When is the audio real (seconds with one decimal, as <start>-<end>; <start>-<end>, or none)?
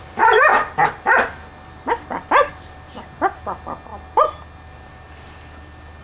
0.0-6.0